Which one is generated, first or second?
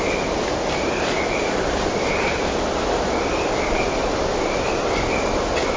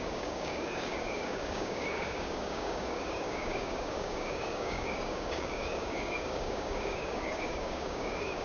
second